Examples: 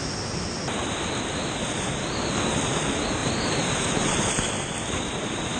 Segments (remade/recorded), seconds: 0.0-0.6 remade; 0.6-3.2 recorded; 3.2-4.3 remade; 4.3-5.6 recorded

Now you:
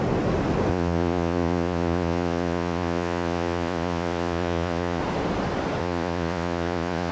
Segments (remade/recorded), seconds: 0.0-0.7 recorded; 0.7-5.0 remade; 5.0-5.8 recorded; 5.8-7.1 remade

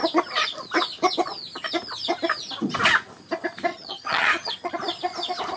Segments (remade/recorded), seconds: 0.0-3.7 recorded; 3.7-4.7 remade; 4.7-5.6 recorded

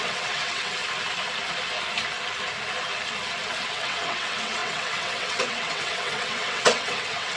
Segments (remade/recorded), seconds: 0.0-0.8 remade; 0.8-3.7 recorded; 3.7-7.4 remade

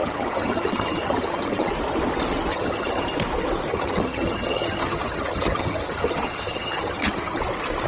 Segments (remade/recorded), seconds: 0.0-1.7 remade; 1.7-2.5 recorded; 2.5-3.0 remade; 3.0-3.7 recorded; 3.7-7.4 remade; 7.4-7.9 recorded